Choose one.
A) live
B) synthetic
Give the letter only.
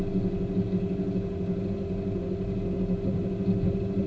A